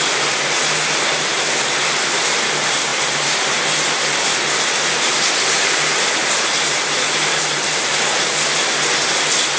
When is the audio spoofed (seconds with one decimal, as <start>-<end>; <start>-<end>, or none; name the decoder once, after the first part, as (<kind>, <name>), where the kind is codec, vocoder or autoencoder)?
2.9-3.6 (vocoder, BigVGAN v2); 6.2-8.9